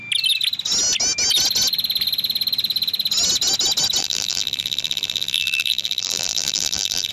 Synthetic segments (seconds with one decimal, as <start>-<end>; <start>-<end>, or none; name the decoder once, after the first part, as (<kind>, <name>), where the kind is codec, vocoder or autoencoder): 4.0-7.1 (vocoder, BigVGAN v2)